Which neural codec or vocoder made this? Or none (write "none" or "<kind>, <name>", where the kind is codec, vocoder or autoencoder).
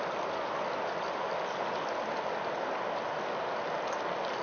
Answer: none